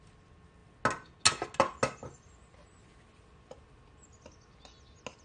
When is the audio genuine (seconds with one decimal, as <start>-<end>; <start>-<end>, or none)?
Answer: 0.0-5.2